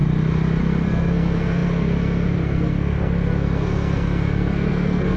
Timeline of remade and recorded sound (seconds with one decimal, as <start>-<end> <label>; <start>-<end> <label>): 0.0-0.6 recorded; 0.6-5.2 remade